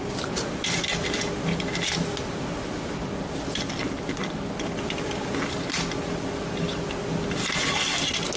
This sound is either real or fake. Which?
real